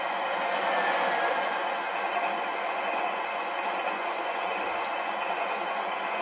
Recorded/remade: remade